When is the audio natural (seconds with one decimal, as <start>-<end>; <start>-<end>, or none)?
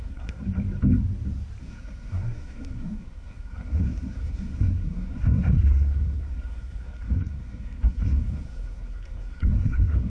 0.4-1.6